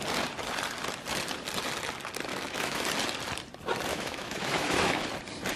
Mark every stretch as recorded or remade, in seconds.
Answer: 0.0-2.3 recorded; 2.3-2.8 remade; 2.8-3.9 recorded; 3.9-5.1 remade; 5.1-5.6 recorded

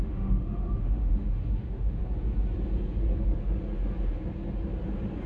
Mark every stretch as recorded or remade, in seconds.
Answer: 0.0-2.0 remade; 2.0-5.3 recorded

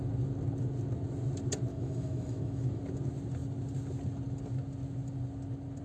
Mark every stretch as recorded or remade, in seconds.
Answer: 0.0-1.7 recorded; 1.7-2.8 remade; 2.8-5.8 recorded

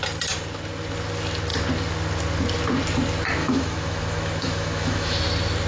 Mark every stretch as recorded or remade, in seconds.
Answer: 0.0-3.4 recorded; 3.4-5.2 remade; 5.2-5.7 recorded

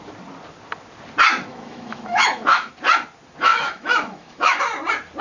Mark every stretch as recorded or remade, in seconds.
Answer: 0.0-1.5 recorded; 1.5-2.7 remade; 2.7-3.5 recorded; 3.5-4.6 remade; 4.6-5.2 recorded

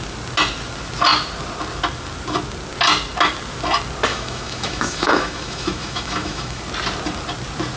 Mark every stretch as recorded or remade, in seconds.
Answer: 0.0-4.1 recorded; 4.1-6.6 remade; 6.6-7.8 recorded